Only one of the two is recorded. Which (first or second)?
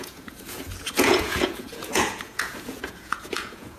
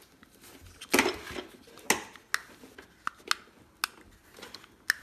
second